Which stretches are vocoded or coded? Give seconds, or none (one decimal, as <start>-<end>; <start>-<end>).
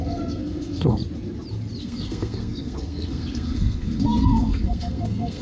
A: 0.0-1.0; 1.8-5.4